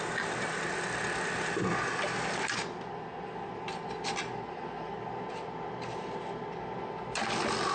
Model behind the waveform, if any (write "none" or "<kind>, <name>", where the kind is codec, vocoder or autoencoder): none